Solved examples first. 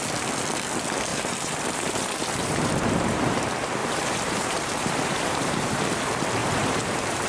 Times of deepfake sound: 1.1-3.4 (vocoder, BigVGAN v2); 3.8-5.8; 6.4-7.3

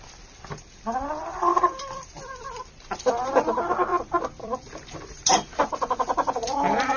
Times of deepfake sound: 3.9-5.7 (vocoder, BigVGAN v2)